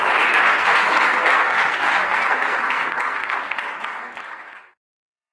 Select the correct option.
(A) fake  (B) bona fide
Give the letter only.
A